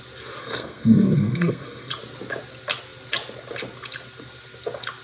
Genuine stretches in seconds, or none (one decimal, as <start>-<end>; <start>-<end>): 0.0-0.4; 1.9-5.0